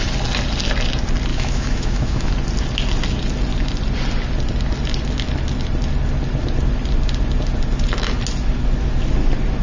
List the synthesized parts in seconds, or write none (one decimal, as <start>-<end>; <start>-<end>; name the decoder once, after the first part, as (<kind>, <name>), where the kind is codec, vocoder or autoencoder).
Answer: 1.3-2.3 (autoencoder, DAC-VAE)